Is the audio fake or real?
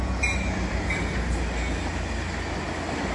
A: real